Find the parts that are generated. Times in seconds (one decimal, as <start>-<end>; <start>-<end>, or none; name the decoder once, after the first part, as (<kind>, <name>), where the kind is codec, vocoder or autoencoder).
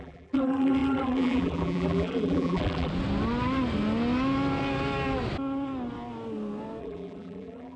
0.0-2.9 (vocoder, BigVGAN v2); 6.8-7.8